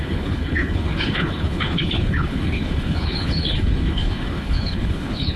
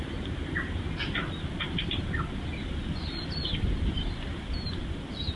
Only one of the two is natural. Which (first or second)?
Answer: second